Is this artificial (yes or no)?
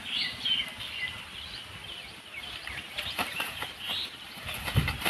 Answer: no